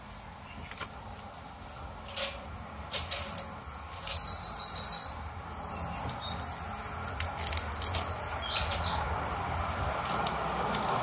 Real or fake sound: real